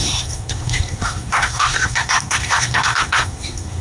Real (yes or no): no